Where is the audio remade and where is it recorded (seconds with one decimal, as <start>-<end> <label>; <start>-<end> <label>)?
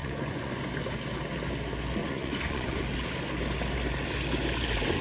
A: 0.0-0.6 remade; 0.6-2.0 recorded; 2.0-2.8 remade; 2.8-5.0 recorded